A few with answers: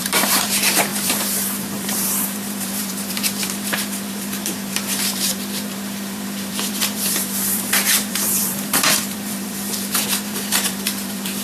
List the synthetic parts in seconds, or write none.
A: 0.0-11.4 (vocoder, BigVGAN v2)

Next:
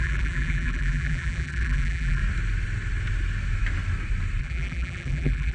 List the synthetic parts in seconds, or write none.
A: 0.0-2.2 (vocoder, BigVGAN v2); 4.4-5.5

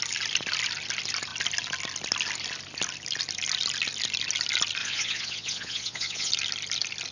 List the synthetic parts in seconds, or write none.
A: 4.8-6.3 (vocoder, Vocos)

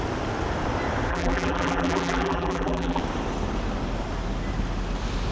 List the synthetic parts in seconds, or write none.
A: 1.1-3.0 (vocoder, BigVGAN v2)

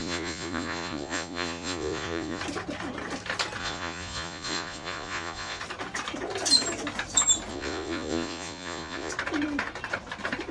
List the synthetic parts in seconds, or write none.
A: 0.0-2.4 (vocoder, Vocos); 3.6-5.6; 7.5-9.1